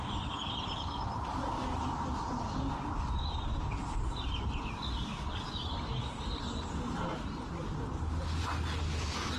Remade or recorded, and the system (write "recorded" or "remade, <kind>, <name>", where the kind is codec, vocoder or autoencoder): recorded